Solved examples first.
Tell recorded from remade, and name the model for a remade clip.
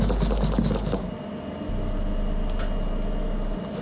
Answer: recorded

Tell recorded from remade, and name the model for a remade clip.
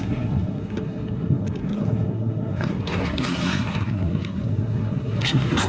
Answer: remade, codec, SNAC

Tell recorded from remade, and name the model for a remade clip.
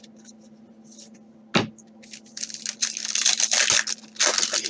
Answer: recorded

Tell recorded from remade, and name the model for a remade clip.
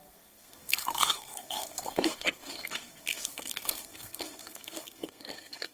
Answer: remade, codec, SNAC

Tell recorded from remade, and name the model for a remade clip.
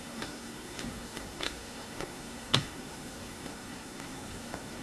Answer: remade, codec, SNAC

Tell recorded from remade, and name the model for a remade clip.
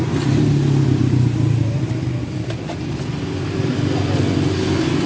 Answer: recorded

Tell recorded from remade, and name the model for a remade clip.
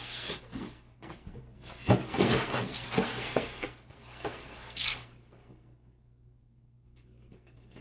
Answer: remade, codec, SNAC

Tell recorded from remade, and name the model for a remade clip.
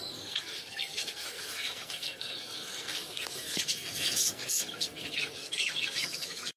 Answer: remade, codec, SNAC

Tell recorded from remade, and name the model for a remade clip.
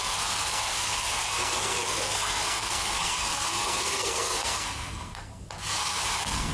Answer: remade, codec, SNAC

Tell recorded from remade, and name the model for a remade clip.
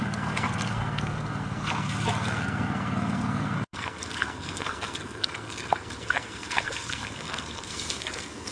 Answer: remade, codec, SNAC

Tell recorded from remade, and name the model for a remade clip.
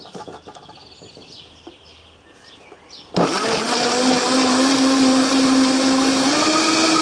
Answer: recorded